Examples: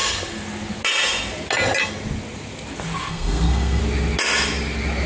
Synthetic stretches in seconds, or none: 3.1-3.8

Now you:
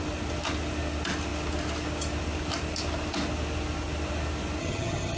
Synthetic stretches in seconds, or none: 4.6-5.2

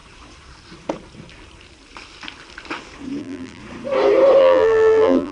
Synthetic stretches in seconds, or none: 3.2-3.6; 4.4-5.3